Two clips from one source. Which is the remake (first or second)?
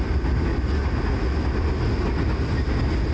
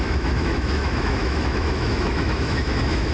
second